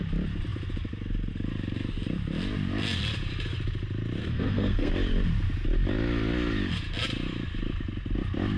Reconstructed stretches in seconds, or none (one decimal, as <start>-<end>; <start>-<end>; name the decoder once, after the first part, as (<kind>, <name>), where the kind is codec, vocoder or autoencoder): 4.2-4.9 (codec, SNAC)